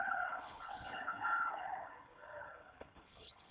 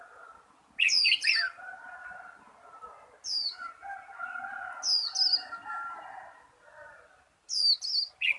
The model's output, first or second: first